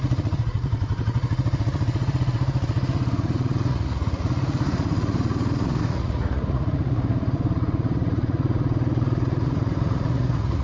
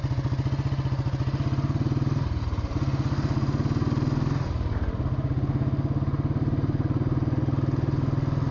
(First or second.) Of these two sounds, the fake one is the first